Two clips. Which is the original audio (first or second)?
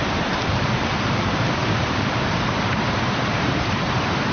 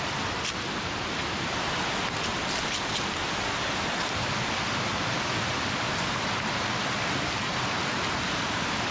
second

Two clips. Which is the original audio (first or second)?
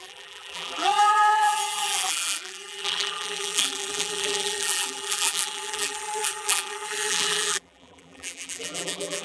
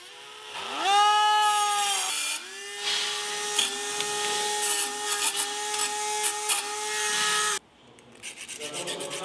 second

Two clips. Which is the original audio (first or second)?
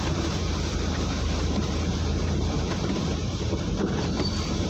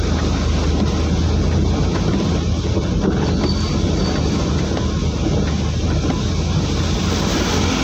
second